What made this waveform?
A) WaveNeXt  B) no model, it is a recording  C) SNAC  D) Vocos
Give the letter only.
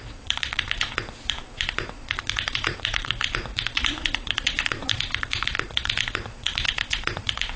D